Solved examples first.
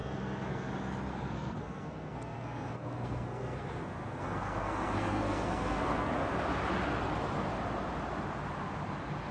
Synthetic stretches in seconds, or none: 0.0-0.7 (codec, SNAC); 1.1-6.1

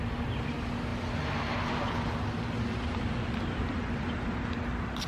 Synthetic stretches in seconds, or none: none

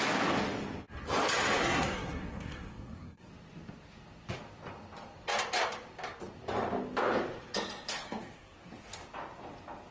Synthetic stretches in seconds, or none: 1.6-3.3 (codec, SNAC); 7.9-8.7

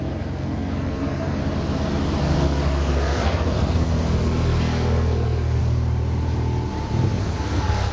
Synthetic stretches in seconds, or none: 0.0-1.4 (codec, SNAC); 2.2-5.6; 7.2-7.9